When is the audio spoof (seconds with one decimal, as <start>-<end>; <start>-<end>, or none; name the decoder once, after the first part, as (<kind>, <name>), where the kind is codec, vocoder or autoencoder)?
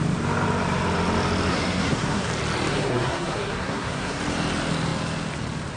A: 1.5-2.3 (codec, SNAC); 2.7-4.2